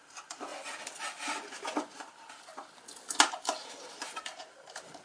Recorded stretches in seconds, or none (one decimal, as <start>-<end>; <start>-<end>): 0.5-1.0; 2.5-3.4